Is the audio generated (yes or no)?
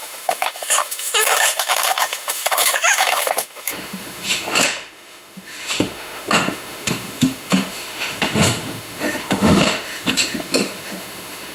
yes